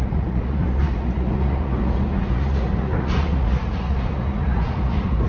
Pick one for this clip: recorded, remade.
remade